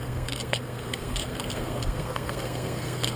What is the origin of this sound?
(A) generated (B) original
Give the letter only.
A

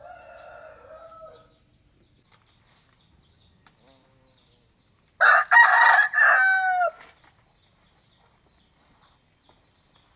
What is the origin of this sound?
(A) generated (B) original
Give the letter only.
B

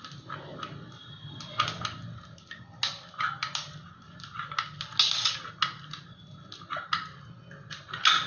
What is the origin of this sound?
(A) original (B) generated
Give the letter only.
A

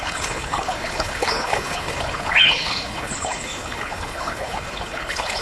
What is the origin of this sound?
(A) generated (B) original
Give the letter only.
A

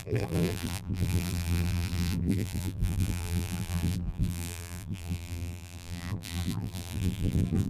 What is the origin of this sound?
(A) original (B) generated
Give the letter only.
B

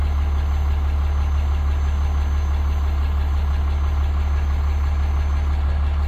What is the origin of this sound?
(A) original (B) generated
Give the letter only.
A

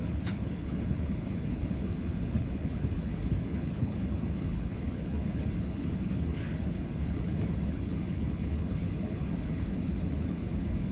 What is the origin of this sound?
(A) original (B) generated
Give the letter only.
B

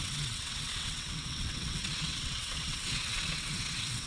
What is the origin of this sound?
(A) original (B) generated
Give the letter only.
B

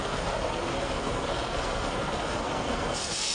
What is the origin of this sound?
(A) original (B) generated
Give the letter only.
B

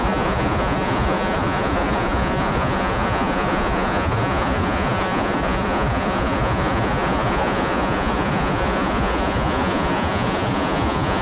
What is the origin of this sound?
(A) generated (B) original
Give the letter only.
A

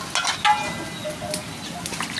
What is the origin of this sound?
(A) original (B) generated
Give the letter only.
A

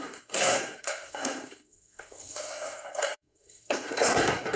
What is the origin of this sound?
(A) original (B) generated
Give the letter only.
B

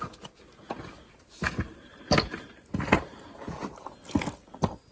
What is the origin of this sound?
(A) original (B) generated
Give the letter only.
A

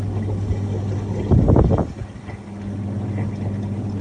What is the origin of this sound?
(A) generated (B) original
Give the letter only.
B